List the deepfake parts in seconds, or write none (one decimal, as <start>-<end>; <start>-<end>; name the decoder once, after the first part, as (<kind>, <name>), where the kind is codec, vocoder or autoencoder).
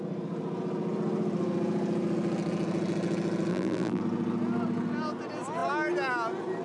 3.5-4.0 (vocoder, BigVGAN v2)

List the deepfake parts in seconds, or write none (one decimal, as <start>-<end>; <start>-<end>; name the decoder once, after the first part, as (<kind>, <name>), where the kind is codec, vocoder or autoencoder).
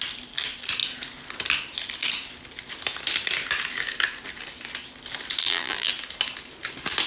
5.4-5.9 (vocoder, BigVGAN v2)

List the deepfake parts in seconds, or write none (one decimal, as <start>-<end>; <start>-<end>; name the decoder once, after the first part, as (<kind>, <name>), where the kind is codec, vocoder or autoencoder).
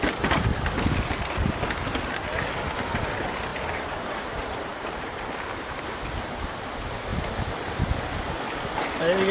3.5-5.2 (vocoder, BigVGAN v2)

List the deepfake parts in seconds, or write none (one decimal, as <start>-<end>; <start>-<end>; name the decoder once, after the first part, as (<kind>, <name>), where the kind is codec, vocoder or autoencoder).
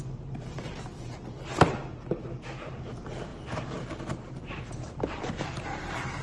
0.0-0.9 (vocoder, BigVGAN v2); 2.7-6.2